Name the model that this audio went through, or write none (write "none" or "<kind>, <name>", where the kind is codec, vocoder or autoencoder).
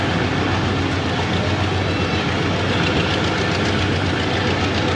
none